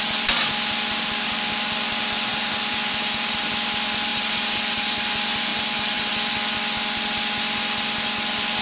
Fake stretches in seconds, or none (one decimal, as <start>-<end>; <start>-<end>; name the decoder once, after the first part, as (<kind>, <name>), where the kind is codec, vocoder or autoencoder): 2.3-3.4 (vocoder, BigVGAN v2); 4.1-5.1; 5.5-6.1